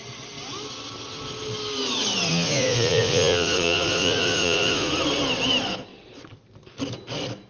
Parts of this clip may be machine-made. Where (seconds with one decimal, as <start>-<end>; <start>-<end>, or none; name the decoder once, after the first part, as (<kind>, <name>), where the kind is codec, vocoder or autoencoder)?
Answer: 2.3-4.9 (vocoder, Vocos)